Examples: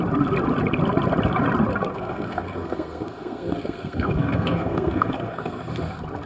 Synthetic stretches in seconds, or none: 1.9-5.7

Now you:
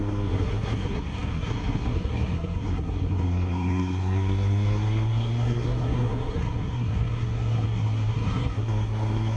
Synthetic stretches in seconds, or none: 0.0-9.4

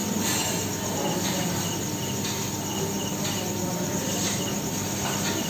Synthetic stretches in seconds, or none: none

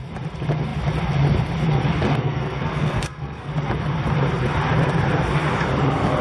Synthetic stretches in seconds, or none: 2.1-3.5

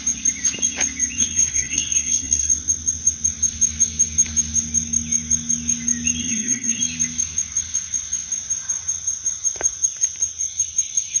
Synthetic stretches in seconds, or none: 1.2-2.5; 6.2-6.8

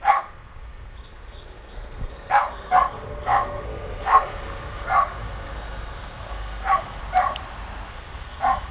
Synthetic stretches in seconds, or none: 0.0-7.0; 7.9-8.7

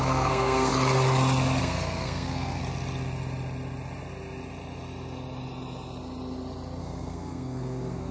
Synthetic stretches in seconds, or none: 0.0-0.7; 1.6-2.6; 6.8-8.1

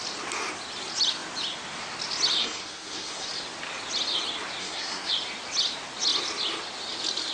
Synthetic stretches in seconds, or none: 2.4-3.3; 4.6-5.1